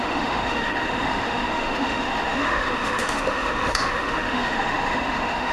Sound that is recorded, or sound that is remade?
remade